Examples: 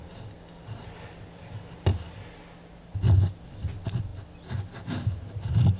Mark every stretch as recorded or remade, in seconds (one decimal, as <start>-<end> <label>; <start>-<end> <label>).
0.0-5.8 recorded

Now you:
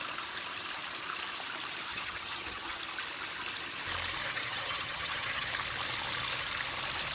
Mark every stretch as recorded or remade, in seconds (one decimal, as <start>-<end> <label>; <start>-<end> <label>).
0.0-1.9 recorded; 1.9-2.8 remade; 2.8-4.2 recorded; 4.2-5.5 remade; 5.5-7.1 recorded

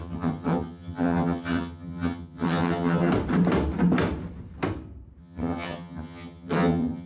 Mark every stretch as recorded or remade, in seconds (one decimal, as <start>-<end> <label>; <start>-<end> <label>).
0.0-3.1 remade; 3.1-5.2 recorded; 5.2-7.1 remade

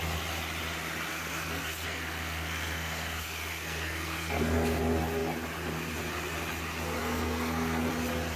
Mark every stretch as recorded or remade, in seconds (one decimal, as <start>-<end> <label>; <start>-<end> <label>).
0.0-1.1 recorded; 1.1-4.8 remade; 4.8-7.0 recorded; 7.0-7.9 remade; 7.9-8.4 recorded

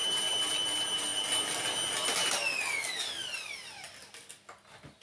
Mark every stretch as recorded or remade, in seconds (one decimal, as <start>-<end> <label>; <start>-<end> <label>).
0.0-5.0 recorded